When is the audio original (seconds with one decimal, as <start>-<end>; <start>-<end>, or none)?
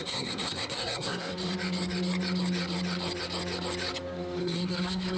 1.3-4.4